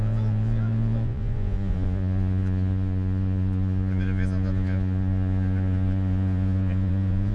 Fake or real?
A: fake